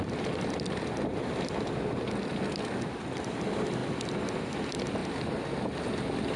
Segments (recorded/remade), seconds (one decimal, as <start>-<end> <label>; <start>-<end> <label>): 0.0-6.4 recorded